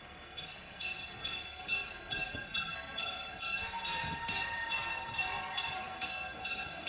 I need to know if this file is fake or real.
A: fake